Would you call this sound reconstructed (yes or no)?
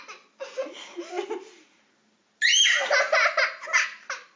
no